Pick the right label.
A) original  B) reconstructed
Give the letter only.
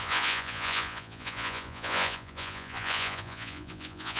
B